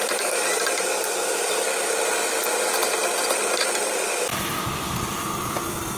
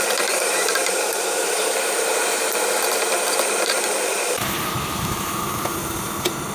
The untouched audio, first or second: first